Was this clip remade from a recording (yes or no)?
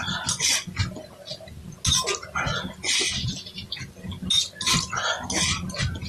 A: no